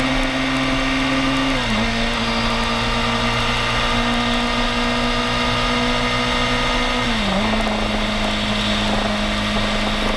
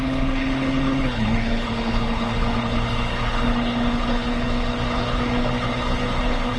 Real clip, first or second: first